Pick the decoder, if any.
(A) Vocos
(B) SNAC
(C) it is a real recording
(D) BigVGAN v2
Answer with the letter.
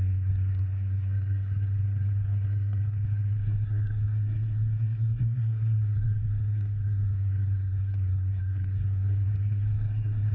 B